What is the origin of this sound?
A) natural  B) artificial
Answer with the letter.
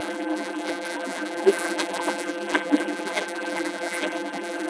B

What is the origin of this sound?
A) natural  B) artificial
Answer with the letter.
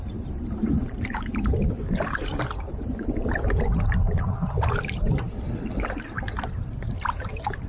B